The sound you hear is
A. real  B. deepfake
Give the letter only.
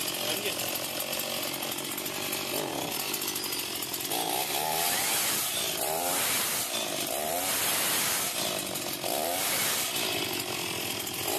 A